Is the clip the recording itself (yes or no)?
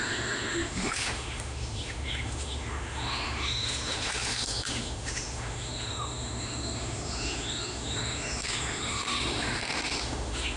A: no